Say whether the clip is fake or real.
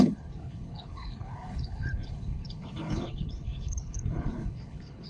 fake